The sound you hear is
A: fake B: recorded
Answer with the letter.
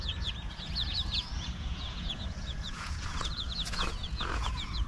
A